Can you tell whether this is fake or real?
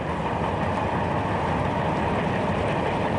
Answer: real